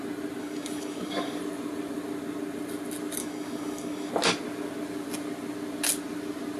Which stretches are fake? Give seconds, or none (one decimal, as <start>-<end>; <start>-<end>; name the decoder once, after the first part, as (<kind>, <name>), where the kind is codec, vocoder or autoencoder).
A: 0.4-1.4 (codec, DAC); 3.2-4.1